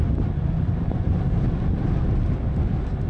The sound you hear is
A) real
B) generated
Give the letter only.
A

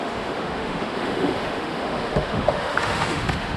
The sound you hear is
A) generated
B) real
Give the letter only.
A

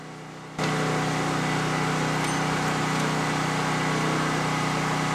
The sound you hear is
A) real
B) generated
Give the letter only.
A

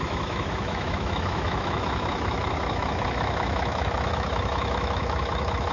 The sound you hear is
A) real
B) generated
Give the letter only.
B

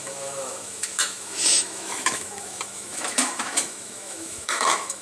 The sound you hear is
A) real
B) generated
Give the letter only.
B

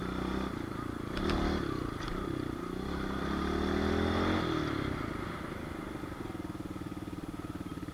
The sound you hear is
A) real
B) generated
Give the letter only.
A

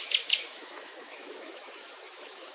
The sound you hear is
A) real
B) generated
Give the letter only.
B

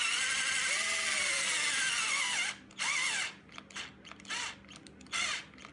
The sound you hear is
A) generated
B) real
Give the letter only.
B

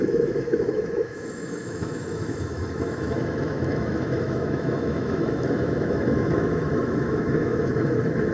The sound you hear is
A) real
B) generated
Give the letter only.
B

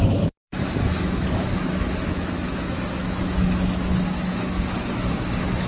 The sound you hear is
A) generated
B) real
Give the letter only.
A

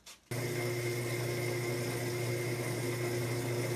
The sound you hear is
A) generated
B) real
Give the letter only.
B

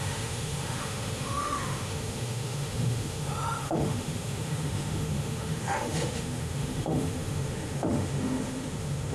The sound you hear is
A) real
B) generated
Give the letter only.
B